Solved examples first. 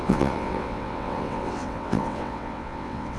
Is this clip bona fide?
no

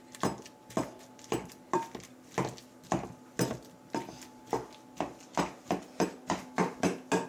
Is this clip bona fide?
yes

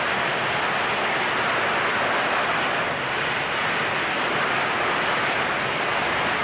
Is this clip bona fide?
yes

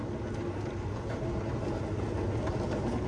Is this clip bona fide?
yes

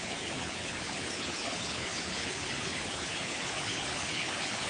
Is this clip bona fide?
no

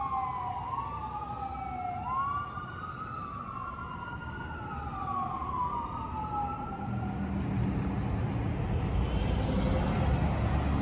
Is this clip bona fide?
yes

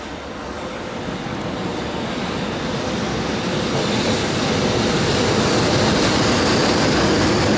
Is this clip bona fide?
yes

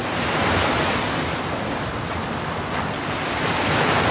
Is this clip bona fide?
yes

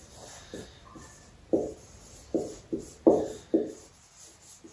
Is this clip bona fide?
yes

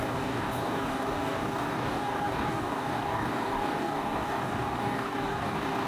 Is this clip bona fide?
no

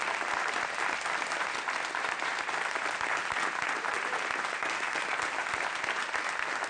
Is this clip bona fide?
yes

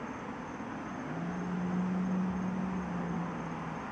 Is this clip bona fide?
yes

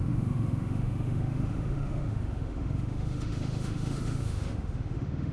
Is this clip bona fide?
no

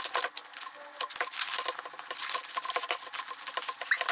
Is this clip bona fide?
yes